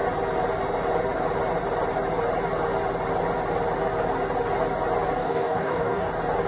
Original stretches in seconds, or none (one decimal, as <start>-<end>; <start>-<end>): 0.0-5.2; 6.1-6.5